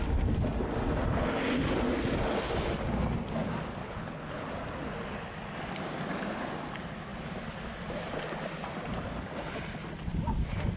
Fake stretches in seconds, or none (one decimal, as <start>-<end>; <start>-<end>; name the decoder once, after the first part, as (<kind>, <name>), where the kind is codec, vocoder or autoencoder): 3.8-4.5 (codec, HILCodec)